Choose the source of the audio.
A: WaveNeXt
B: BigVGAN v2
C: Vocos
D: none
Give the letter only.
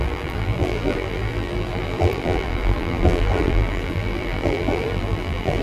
B